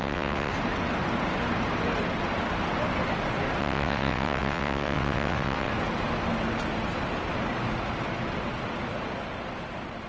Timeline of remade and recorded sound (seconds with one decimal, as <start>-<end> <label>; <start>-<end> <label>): 0.0-0.5 remade; 0.5-3.6 recorded; 3.6-5.7 remade; 5.7-10.1 recorded

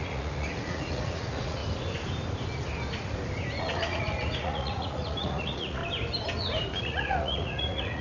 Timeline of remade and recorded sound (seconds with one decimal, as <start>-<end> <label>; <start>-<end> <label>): 0.0-1.6 remade; 1.6-3.6 recorded; 3.6-5.8 remade; 5.8-6.8 recorded; 6.8-8.0 remade